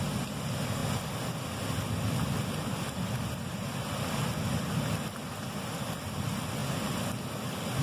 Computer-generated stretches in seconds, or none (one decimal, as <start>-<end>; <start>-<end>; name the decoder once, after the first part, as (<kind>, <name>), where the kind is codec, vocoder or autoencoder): none